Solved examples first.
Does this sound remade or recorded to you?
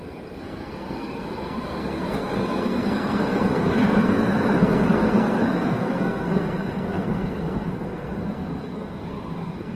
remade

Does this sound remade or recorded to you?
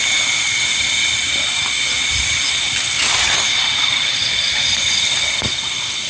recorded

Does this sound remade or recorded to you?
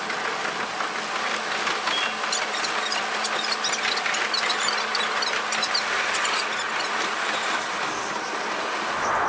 recorded